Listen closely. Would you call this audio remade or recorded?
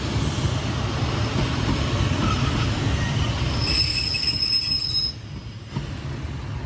recorded